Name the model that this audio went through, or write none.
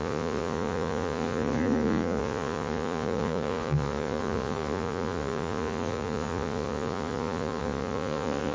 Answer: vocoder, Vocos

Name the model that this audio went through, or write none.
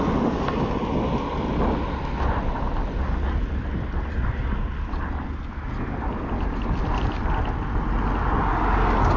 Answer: none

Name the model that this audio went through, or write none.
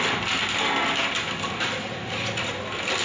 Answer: none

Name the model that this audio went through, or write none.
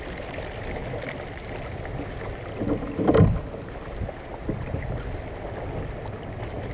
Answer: none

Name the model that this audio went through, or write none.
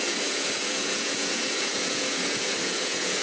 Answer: vocoder, Vocos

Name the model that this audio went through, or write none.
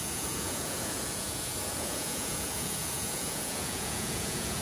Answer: vocoder, Vocos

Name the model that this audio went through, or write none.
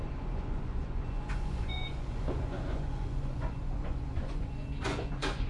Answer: vocoder, Vocos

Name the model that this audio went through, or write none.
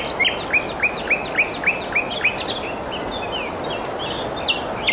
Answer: none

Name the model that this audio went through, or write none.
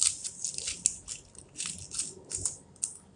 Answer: none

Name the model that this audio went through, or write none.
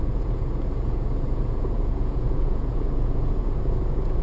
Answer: vocoder, Vocos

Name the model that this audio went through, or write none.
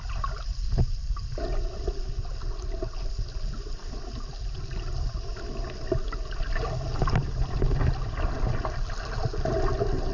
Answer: none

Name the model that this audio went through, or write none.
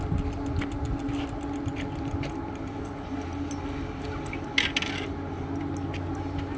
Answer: none